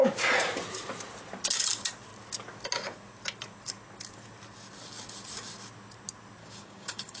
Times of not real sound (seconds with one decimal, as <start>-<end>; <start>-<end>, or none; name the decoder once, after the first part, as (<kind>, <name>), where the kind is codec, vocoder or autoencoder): 6.4-7.2 (codec, DAC)